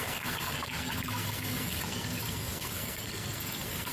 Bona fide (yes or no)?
no